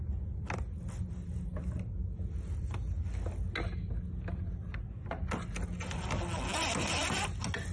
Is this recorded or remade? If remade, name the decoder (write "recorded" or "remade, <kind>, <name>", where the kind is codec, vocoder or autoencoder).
recorded